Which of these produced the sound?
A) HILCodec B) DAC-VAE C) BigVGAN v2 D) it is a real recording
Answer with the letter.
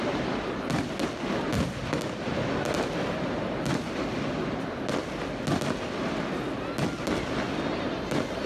D